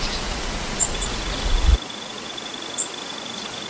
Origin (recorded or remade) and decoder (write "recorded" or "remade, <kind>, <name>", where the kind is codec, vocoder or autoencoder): remade, vocoder, Vocos